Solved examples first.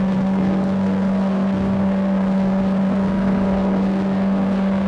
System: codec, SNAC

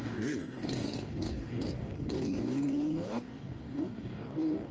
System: codec, DAC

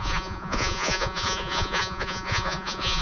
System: vocoder, Vocos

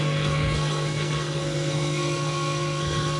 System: codec, SNAC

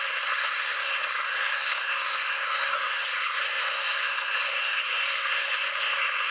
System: codec, SNAC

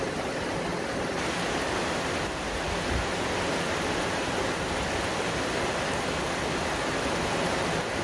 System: none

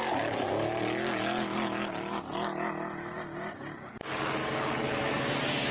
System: none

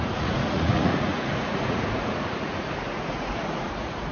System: vocoder, Vocos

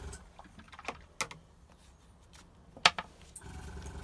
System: none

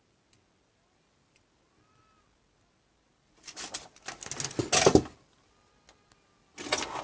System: none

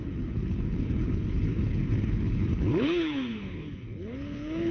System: codec, HILCodec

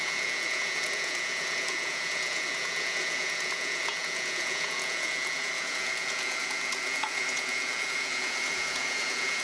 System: vocoder, Vocos